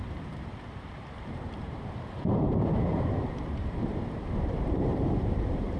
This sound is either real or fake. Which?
fake